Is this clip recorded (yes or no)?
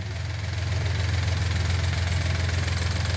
yes